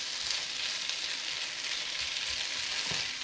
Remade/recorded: recorded